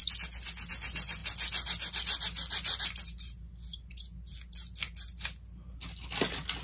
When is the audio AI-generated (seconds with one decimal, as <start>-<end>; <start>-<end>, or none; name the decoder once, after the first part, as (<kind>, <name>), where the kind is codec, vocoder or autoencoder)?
none